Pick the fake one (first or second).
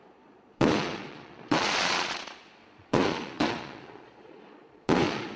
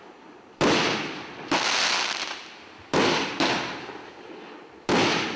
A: first